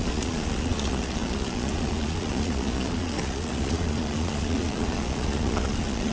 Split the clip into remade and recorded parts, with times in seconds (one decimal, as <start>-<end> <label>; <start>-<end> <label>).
0.0-6.1 remade